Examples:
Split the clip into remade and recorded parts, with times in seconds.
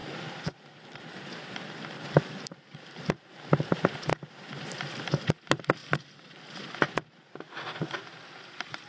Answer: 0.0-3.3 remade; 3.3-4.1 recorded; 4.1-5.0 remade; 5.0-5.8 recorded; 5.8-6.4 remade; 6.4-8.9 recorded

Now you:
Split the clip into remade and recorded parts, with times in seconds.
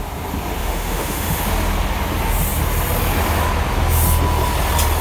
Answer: 0.0-0.6 recorded; 0.6-1.5 remade; 1.5-5.0 recorded